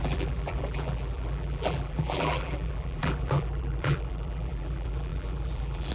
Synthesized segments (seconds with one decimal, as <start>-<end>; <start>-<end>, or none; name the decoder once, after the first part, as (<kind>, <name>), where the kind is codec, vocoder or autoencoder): 0.0-5.9 (vocoder, BigVGAN v2)